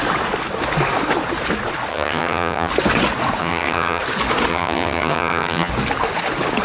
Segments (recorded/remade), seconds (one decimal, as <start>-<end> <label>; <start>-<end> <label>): 0.0-1.9 recorded; 1.9-2.7 remade; 2.7-3.4 recorded; 3.4-4.0 remade; 4.0-4.5 recorded; 4.5-5.7 remade; 5.7-6.6 recorded

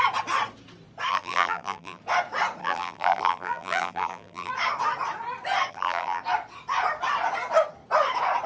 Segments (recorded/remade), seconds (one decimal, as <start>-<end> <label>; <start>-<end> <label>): 0.0-1.1 recorded; 1.1-2.0 remade; 2.0-2.6 recorded; 2.6-4.5 remade; 4.5-5.7 recorded; 5.7-6.2 remade; 6.2-8.5 recorded

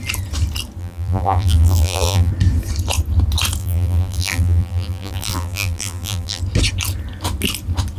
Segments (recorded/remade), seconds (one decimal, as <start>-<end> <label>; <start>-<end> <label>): 0.0-0.8 recorded; 0.8-2.3 remade; 2.3-3.6 recorded; 3.6-6.4 remade; 6.4-8.0 recorded

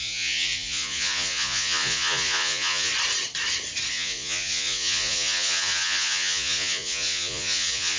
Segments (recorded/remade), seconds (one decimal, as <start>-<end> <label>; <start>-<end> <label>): 0.0-2.9 remade; 2.9-3.9 recorded; 3.9-8.0 remade